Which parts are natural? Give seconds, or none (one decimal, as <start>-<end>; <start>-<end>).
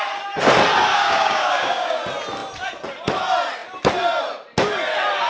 0.0-0.9; 2.0-5.3